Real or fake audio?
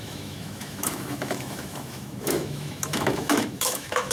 fake